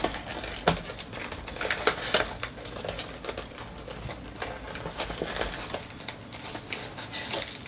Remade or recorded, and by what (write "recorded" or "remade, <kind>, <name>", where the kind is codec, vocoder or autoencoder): recorded